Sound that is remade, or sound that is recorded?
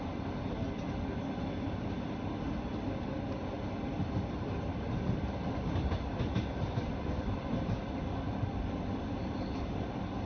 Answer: recorded